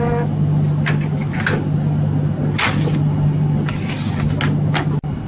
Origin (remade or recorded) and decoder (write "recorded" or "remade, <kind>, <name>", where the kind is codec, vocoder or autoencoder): recorded